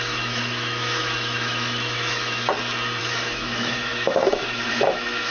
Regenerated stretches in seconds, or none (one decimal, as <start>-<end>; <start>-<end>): 0.0-2.5; 3.0-5.3